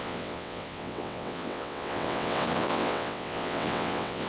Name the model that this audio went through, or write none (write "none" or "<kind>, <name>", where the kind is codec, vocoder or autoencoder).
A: vocoder, WaveNeXt